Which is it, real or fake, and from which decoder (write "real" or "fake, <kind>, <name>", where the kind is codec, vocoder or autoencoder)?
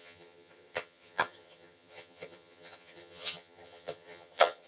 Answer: fake, vocoder, HiFi-GAN